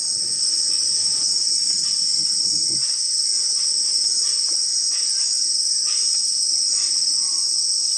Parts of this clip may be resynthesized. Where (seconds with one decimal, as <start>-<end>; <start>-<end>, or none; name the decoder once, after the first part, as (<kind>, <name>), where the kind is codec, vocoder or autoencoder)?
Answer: 0.8-1.9 (vocoder, Vocos); 4.7-6.9

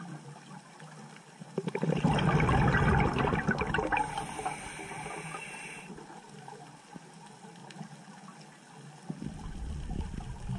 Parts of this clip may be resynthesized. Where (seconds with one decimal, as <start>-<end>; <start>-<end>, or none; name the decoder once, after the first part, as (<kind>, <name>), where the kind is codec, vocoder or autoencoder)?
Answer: none

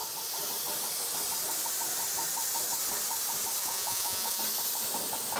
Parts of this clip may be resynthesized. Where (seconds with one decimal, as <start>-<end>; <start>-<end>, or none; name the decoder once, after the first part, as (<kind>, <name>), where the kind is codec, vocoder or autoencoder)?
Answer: 3.6-4.4 (vocoder, Vocos)

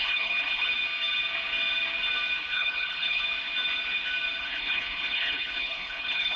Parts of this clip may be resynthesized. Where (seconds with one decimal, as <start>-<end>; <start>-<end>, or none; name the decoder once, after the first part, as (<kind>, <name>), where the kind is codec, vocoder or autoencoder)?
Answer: 0.0-0.7 (codec, HILCodec); 2.5-3.2; 4.4-6.4

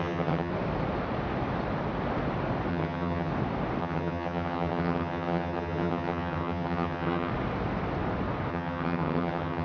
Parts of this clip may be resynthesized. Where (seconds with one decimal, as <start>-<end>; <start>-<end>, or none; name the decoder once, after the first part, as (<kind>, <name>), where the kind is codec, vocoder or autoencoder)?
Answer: 0.0-0.5 (vocoder, HiFi-GAN); 2.7-3.3; 3.8-7.3; 8.5-9.6

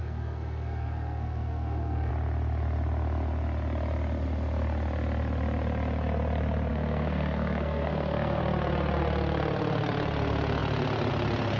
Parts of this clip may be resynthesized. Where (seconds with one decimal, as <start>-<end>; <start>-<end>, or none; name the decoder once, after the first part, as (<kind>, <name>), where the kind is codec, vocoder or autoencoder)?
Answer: 0.0-2.1 (codec, SNAC); 6.7-8.4